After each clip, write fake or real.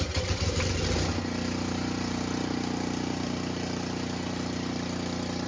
real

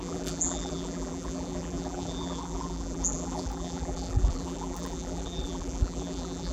fake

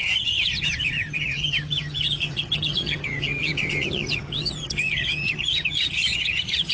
fake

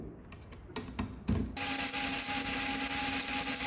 real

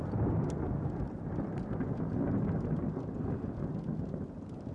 real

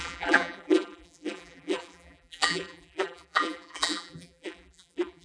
fake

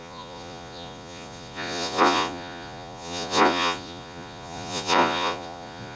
fake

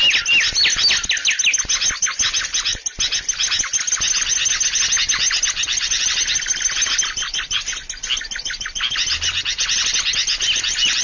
real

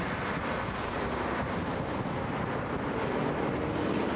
real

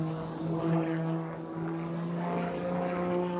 fake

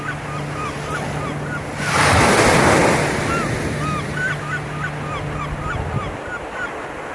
real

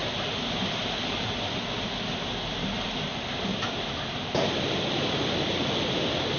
real